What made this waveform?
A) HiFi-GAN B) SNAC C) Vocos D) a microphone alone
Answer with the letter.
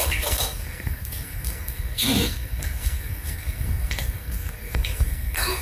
B